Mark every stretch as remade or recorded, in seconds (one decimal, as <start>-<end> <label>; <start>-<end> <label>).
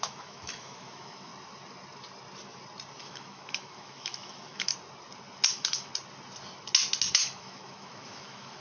0.0-1.3 remade; 1.3-3.0 recorded; 3.0-4.7 remade; 4.7-5.5 recorded; 5.5-5.9 remade; 5.9-7.1 recorded; 7.1-8.6 remade